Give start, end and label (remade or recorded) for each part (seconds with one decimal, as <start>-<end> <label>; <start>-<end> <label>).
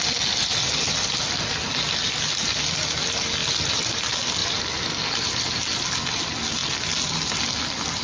0.0-0.5 recorded; 0.5-1.2 remade; 1.2-3.4 recorded; 3.4-4.0 remade; 4.0-4.4 recorded; 4.4-5.2 remade; 5.2-8.0 recorded